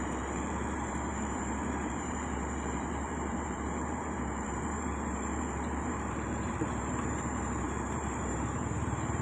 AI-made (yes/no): yes